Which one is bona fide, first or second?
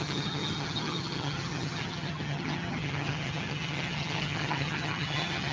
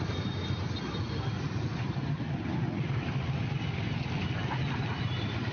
second